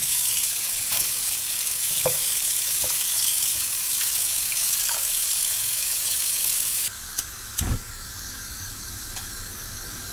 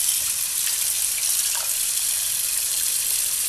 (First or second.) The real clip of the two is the second